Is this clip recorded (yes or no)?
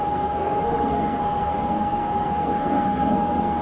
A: no